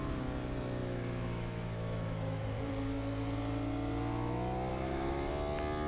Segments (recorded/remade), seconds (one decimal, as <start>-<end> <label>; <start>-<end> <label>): 0.0-0.8 recorded; 0.8-2.7 remade; 2.7-4.7 recorded; 4.7-5.3 remade; 5.3-5.9 recorded